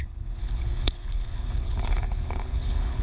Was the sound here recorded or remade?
remade